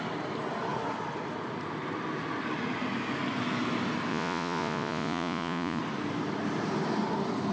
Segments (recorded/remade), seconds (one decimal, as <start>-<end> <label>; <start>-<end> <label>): 0.0-4.1 recorded; 4.1-5.8 remade; 5.8-7.5 recorded